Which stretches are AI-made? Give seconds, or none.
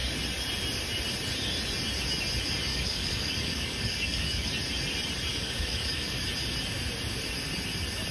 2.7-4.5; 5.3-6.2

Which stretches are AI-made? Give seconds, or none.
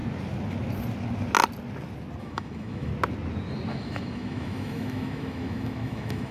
2.2-2.9; 3.7-6.3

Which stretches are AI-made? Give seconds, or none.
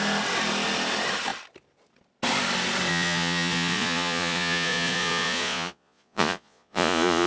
2.9-7.3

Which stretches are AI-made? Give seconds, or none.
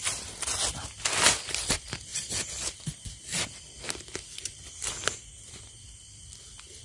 none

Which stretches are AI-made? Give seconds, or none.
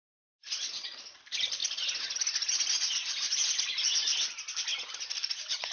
0.0-1.6; 5.0-5.7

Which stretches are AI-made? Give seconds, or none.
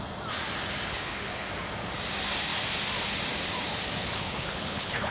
0.9-1.5; 4.1-5.1